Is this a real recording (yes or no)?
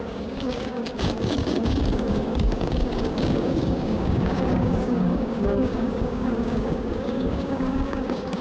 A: no